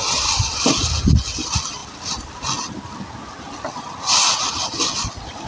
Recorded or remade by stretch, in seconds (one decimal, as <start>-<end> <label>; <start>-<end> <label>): 0.0-5.5 recorded

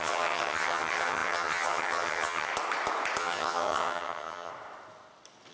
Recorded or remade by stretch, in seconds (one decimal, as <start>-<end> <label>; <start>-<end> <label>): 0.0-2.5 remade; 2.5-3.2 recorded; 3.2-4.5 remade; 4.5-5.5 recorded

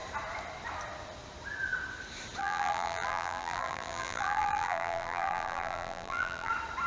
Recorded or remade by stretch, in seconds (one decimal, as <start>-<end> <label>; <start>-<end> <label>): 0.0-2.4 recorded; 2.4-6.5 remade; 6.5-6.9 recorded

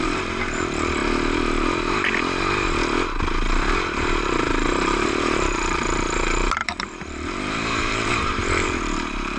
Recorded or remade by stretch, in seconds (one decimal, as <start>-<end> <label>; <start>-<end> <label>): 0.0-1.0 remade; 1.0-4.2 recorded; 4.2-9.4 remade

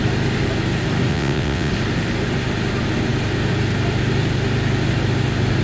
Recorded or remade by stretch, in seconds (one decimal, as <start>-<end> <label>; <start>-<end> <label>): 0.0-1.1 recorded; 1.1-1.7 remade; 1.7-5.6 recorded

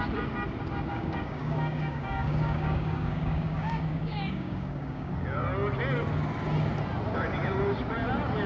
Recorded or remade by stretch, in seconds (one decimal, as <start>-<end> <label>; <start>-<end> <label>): 0.0-0.9 recorded; 0.9-5.1 remade; 5.1-8.5 recorded

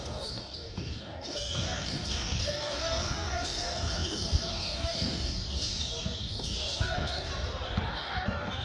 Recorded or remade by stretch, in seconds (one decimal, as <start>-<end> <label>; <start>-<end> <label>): 0.0-7.3 remade; 7.3-7.9 recorded; 7.9-8.6 remade

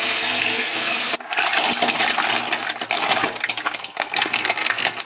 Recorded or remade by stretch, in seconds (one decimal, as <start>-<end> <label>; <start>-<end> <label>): 0.0-1.1 remade; 1.1-3.8 recorded; 3.8-5.0 remade